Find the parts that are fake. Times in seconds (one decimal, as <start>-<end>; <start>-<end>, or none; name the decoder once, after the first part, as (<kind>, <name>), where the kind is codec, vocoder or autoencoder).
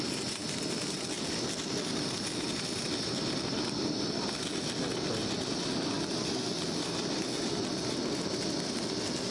none